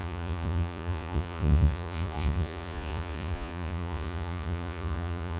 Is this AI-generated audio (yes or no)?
yes